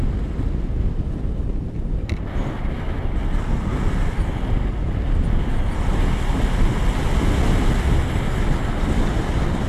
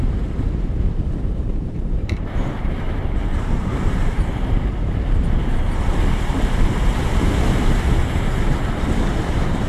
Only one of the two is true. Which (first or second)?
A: first